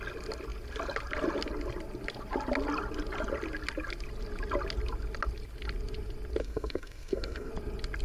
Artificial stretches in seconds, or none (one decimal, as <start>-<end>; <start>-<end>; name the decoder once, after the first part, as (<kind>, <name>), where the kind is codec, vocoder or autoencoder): 6.4-7.5 (codec, SNAC)